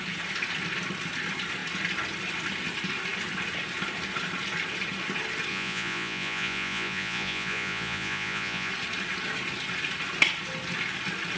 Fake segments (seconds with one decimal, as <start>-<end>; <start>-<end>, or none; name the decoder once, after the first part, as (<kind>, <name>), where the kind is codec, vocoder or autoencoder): 5.5-8.7 (vocoder, Vocos)